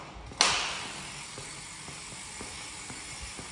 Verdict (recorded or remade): recorded